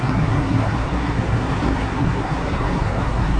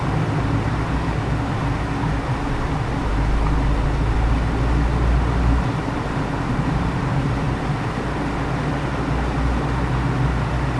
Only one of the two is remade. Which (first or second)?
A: first